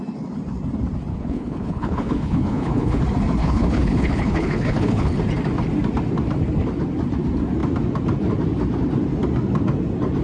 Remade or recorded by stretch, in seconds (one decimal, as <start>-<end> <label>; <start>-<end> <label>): 0.0-1.1 recorded; 1.1-3.0 remade; 3.0-3.4 recorded; 3.4-5.2 remade; 5.2-10.2 recorded